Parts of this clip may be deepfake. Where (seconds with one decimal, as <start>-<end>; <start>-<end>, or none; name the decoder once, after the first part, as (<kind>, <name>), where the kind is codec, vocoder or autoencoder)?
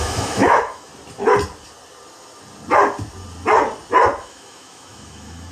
0.0-0.9 (autoencoder, DAC-VAE); 4.2-5.5